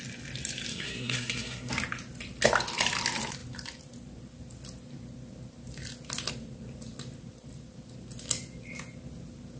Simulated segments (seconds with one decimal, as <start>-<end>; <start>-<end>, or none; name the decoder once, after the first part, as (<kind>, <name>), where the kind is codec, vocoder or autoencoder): 0.7-1.7 (codec, SNAC)